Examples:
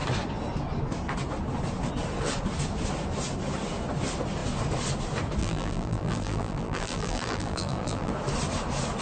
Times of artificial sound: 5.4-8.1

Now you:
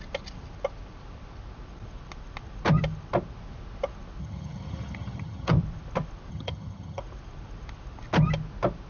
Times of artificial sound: 4.2-5.5; 6.3-7.0

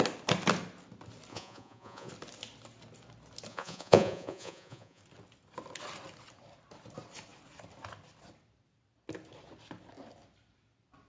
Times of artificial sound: 1.3-2.1; 3.5-5.0